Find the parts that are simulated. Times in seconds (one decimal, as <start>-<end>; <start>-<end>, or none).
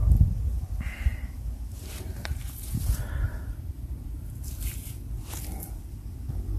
1.1-4.3